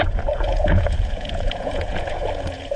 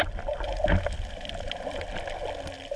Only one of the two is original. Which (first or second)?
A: second